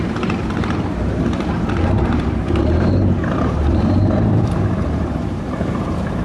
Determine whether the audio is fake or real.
fake